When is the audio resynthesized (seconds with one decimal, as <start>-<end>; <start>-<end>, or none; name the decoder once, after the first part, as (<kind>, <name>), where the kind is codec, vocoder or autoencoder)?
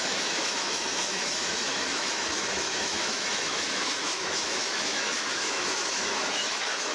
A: 0.0-6.9 (autoencoder, DAC-VAE)